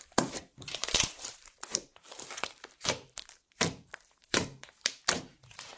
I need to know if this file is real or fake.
fake